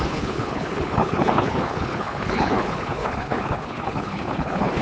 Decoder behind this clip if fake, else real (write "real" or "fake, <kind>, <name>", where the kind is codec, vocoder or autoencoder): fake, codec, HILCodec